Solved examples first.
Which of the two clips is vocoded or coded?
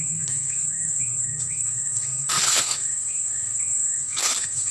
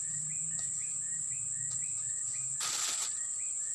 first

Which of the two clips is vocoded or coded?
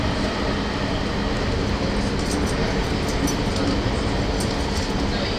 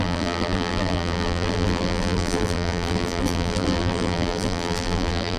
second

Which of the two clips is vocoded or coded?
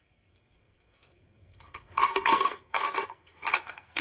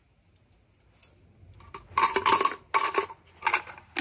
first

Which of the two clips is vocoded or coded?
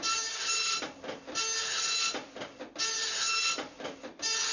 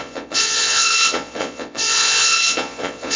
second